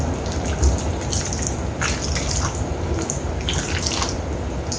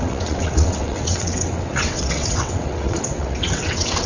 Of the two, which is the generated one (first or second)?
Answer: second